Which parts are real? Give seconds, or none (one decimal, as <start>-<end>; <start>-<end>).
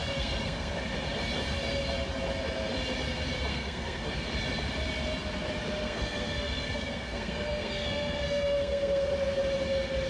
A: 0.7-3.5; 4.1-5.8; 9.1-10.1